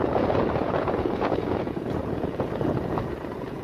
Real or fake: fake